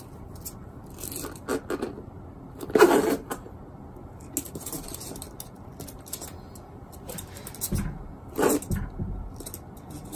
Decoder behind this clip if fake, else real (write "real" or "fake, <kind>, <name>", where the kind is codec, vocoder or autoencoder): real